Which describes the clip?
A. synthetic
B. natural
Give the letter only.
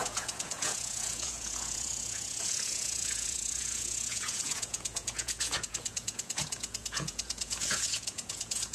A